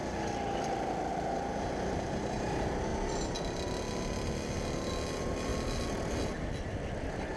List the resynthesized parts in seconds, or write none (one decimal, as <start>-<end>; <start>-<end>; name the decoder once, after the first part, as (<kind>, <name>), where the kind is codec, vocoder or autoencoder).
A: none